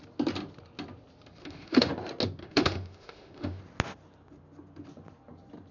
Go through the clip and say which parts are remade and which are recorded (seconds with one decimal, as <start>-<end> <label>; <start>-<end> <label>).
0.0-1.4 recorded; 1.4-1.9 remade; 1.9-2.4 recorded; 2.4-3.6 remade; 3.6-5.7 recorded